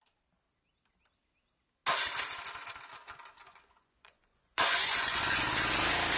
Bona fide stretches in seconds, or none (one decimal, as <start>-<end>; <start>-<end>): 0.0-3.4; 5.4-6.2